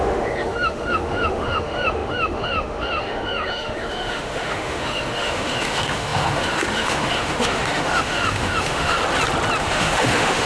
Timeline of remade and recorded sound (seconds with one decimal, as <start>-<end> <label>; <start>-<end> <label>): 0.0-9.0 remade; 9.0-9.6 recorded; 9.6-10.5 remade